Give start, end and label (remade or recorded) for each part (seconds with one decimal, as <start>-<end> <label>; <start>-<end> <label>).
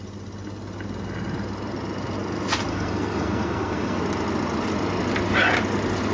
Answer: 0.0-2.7 recorded; 2.7-4.0 remade; 4.0-6.1 recorded